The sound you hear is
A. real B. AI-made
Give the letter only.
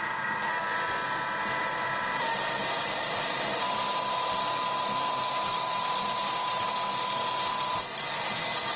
A